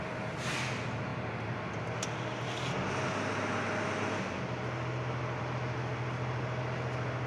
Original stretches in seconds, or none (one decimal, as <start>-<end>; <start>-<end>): 0.0-7.3